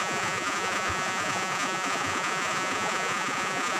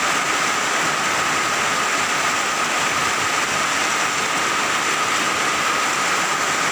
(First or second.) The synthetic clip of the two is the first